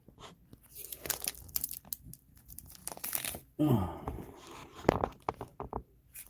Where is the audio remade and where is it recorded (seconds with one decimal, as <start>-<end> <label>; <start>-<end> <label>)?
0.0-0.5 remade; 0.5-2.4 recorded; 2.4-2.8 remade; 2.8-3.6 recorded; 3.6-4.6 remade; 4.6-5.6 recorded; 5.6-6.3 remade

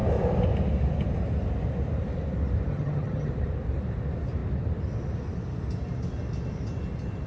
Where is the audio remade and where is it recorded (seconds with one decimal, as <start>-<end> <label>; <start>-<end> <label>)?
0.0-2.7 recorded; 2.7-3.3 remade; 3.3-7.3 recorded